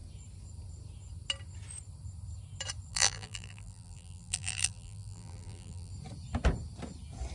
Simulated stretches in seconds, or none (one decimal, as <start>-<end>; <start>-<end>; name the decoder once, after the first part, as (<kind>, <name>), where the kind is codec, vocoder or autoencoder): 2.9-5.9 (vocoder, BigVGAN v2)